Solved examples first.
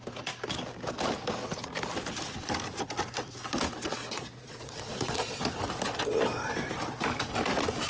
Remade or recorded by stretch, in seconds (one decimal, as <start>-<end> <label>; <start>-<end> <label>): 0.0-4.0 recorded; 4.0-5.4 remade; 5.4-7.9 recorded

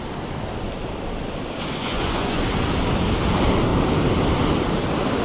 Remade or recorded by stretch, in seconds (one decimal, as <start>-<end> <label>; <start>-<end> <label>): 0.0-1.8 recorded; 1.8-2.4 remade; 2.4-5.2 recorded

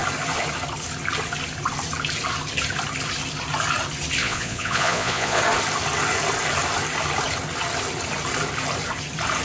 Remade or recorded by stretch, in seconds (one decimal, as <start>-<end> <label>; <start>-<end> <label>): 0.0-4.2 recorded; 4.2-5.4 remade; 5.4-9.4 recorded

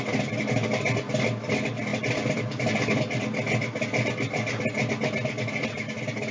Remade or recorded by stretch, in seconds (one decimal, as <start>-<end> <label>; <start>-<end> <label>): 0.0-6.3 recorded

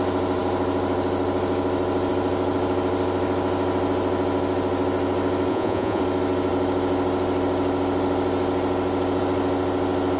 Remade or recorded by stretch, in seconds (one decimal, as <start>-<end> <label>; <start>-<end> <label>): 0.0-5.5 recorded; 5.5-6.0 remade; 6.0-10.2 recorded

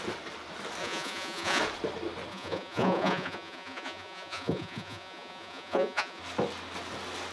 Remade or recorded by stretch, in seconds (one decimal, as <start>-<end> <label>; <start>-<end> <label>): 0.0-0.8 recorded; 0.8-1.6 remade; 1.6-2.3 recorded; 2.3-6.2 remade; 6.2-7.3 recorded

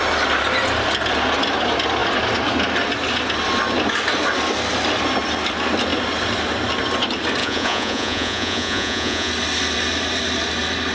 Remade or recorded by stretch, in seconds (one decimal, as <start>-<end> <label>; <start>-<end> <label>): 0.0-7.4 recorded; 7.4-9.3 remade; 9.3-10.9 recorded

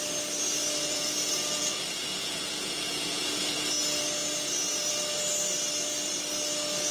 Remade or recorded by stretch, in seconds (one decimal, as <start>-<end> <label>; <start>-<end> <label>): 0.0-0.8 recorded; 0.8-3.7 remade; 3.7-6.9 recorded